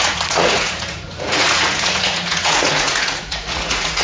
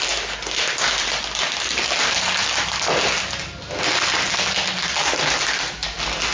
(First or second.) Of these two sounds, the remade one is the first